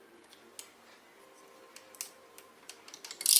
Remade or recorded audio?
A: recorded